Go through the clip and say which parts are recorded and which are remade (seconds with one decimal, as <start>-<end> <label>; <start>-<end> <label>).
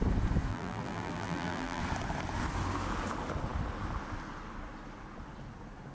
0.0-0.5 recorded; 0.5-1.8 remade; 1.8-5.9 recorded